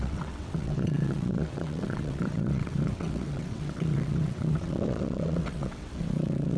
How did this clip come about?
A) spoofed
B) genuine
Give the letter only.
A